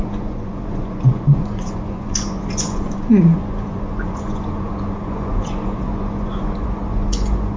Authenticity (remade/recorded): remade